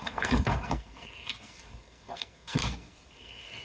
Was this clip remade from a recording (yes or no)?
yes